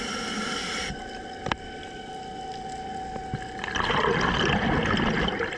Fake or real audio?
real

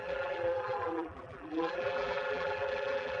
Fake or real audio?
fake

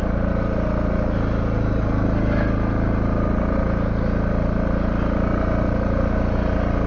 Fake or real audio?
real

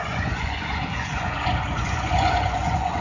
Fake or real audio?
fake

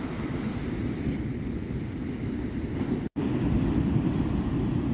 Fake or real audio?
real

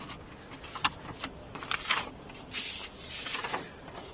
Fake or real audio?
real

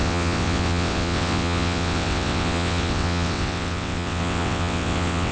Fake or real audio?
fake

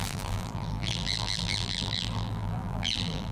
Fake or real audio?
fake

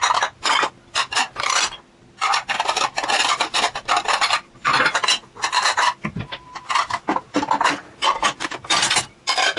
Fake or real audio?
fake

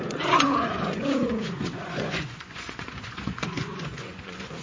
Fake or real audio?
fake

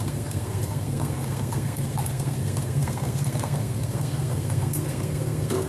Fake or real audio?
fake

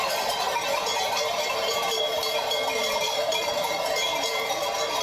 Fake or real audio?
fake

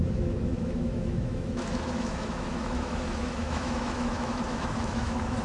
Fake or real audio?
fake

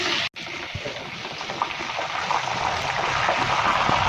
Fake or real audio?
real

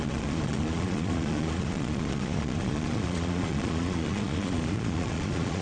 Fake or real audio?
fake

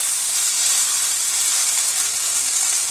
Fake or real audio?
real